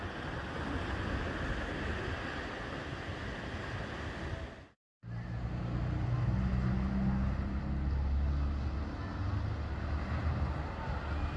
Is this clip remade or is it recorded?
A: recorded